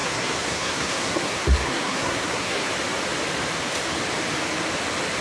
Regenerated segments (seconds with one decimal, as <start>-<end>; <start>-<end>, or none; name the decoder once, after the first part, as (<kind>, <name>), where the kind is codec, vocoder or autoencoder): 0.0-2.7 (codec, SNAC)